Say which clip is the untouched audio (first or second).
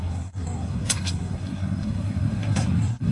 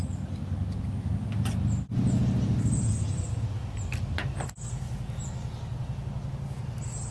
second